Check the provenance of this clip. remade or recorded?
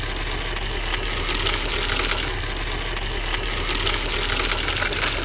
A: recorded